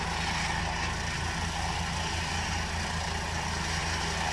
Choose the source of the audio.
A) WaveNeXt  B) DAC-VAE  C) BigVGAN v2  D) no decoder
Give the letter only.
D